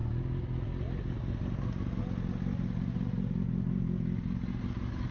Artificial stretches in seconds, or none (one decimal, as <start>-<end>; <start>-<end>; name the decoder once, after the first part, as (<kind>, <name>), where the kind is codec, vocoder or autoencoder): none